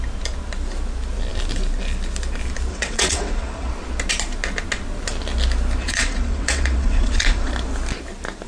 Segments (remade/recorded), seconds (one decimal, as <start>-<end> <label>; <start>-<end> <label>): 0.0-2.7 recorded; 2.7-3.7 remade; 3.7-5.8 recorded; 5.8-7.5 remade; 7.5-8.5 recorded